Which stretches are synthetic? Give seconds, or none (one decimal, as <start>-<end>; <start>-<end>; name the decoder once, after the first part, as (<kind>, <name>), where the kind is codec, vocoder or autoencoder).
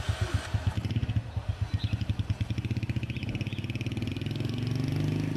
none